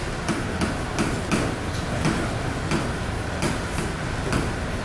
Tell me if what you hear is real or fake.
real